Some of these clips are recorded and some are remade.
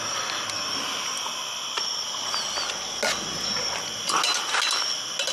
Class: recorded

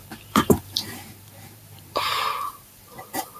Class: remade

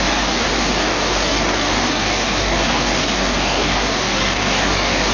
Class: remade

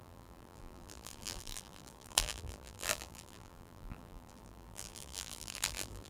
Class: remade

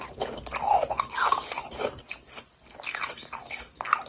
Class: recorded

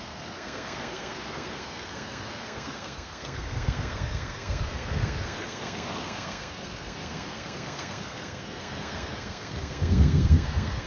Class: remade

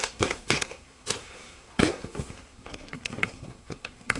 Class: remade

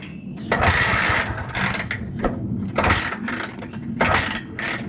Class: recorded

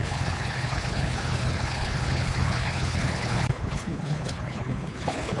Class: remade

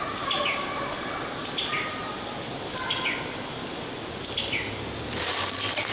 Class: recorded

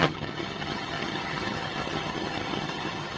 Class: remade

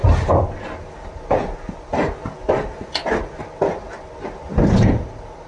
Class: recorded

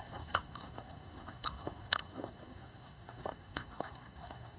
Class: remade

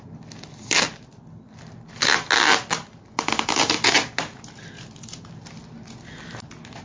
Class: recorded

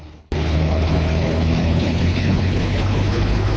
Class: remade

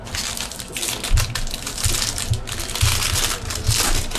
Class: recorded